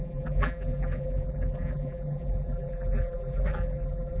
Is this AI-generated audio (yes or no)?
yes